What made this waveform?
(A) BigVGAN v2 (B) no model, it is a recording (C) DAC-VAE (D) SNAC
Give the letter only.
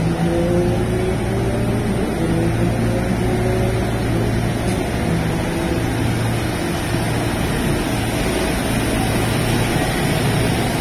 B